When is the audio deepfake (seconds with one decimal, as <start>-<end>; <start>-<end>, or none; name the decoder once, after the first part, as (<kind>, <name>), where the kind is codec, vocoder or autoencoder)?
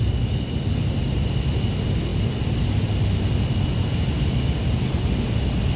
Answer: none